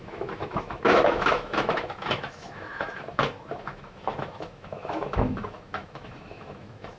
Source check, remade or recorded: remade